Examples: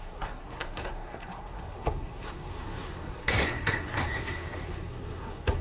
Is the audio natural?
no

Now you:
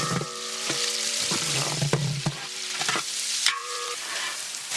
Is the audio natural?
no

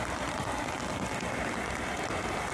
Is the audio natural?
yes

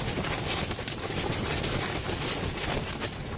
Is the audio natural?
yes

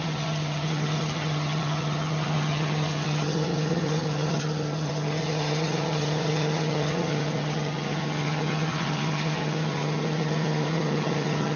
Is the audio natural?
no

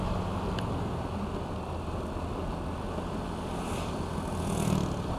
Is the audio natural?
yes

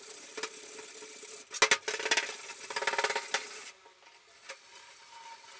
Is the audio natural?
yes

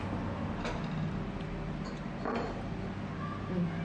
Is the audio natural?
yes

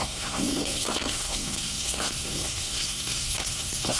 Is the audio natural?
no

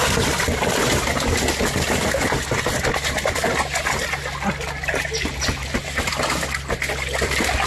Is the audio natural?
yes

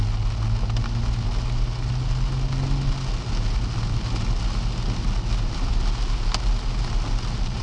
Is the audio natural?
yes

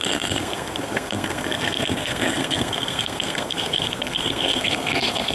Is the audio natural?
no